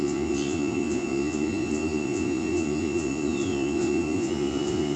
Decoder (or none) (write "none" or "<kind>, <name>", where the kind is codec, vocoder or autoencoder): vocoder, Vocos